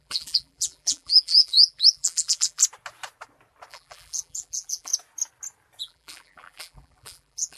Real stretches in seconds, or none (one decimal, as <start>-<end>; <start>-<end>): 2.6-3.7; 4.9-5.8